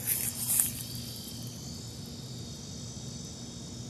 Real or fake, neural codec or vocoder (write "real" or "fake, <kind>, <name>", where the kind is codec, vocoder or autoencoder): real